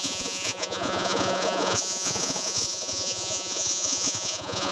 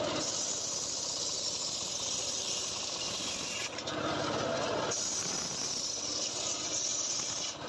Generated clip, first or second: first